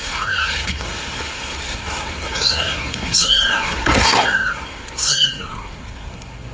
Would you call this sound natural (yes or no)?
no